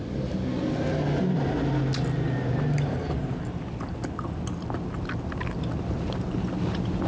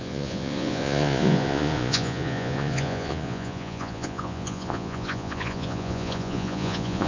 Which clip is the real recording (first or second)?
first